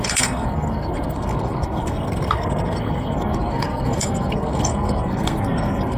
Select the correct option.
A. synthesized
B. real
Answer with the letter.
A